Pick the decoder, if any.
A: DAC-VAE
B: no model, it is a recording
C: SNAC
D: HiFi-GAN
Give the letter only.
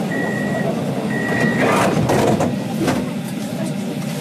B